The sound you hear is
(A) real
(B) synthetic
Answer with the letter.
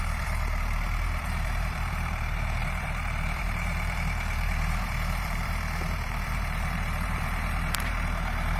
B